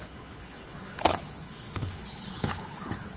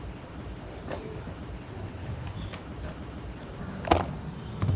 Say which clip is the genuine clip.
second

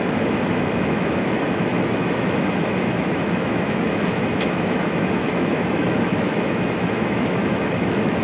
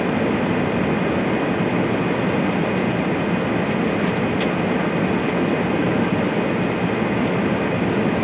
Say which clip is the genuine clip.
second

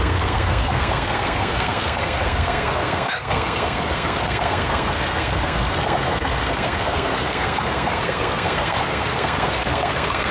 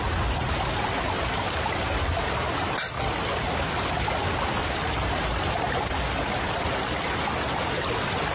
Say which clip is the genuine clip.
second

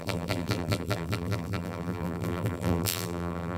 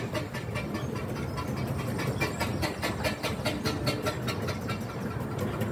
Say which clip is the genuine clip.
second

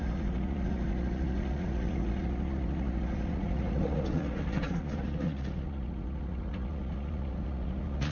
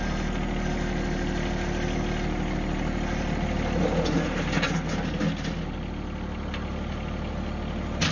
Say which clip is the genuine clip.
second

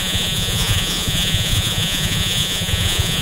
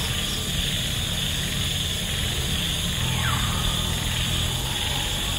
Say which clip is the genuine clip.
second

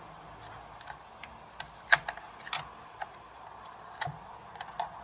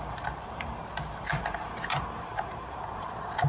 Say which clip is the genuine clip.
first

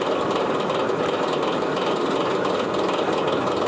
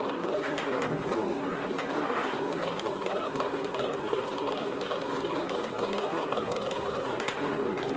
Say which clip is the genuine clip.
first